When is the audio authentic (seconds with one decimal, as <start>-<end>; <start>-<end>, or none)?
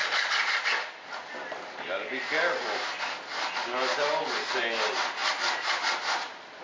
0.0-3.7; 4.6-6.6